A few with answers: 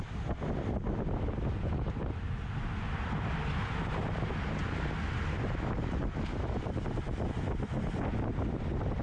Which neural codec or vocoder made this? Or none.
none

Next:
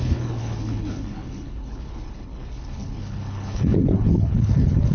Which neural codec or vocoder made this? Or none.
codec, HILCodec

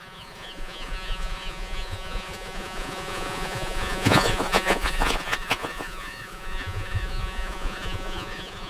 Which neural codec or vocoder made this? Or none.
vocoder, Vocos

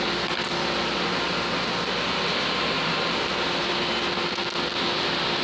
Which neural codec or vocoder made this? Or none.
none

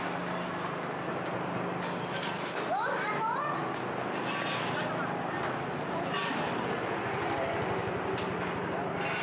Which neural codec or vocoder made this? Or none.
none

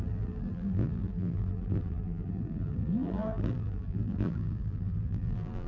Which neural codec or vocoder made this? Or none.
vocoder, BigVGAN v2